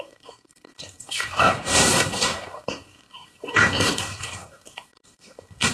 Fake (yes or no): yes